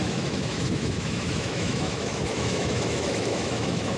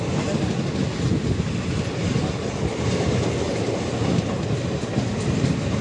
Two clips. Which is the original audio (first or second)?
second